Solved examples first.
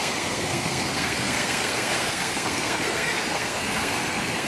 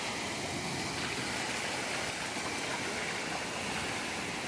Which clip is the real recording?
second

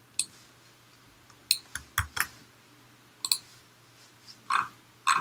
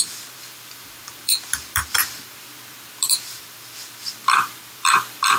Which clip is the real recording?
first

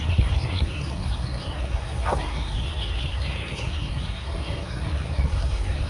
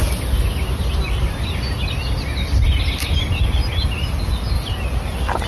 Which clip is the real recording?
second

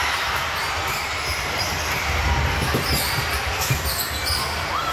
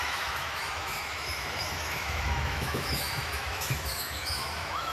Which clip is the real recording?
first